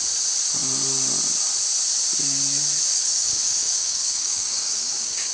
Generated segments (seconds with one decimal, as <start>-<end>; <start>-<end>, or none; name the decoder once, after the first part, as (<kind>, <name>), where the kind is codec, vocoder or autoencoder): 2.9-5.3 (codec, DAC)